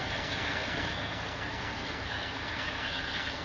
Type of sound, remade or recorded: remade